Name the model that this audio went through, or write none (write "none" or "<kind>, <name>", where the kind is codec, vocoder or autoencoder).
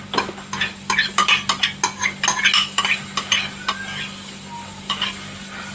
none